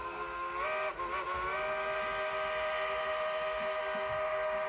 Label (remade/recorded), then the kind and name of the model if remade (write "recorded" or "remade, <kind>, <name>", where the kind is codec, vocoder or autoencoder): recorded